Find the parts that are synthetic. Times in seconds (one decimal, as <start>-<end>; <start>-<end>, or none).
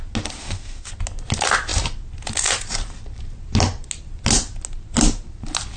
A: 0.4-0.9